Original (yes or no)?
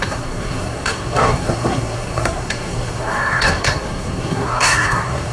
no